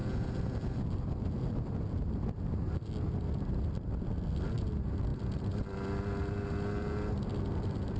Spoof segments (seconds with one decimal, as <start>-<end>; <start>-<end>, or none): none